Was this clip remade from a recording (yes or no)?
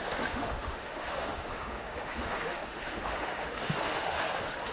yes